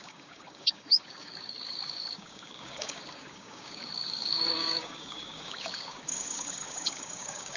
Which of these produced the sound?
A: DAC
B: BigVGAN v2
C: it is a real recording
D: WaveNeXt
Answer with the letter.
A